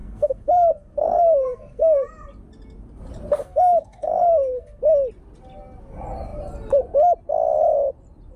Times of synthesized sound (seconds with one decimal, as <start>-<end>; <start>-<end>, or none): 0.0-2.1; 3.4-4.8